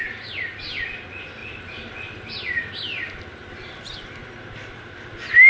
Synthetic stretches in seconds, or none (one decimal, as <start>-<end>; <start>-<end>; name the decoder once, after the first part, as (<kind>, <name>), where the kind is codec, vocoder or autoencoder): 0.0-1.4 (vocoder, BigVGAN v2); 2.6-5.5